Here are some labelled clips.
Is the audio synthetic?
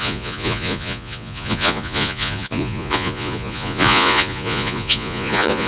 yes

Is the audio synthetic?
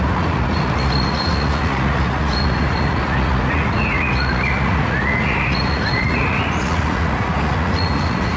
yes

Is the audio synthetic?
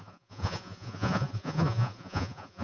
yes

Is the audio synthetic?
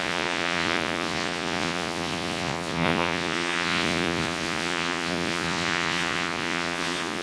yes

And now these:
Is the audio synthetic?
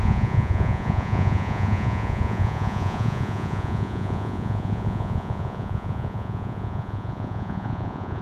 yes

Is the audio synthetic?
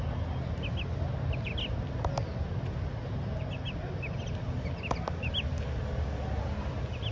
no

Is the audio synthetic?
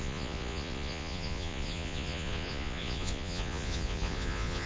yes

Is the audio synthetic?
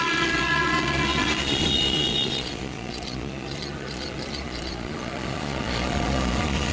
yes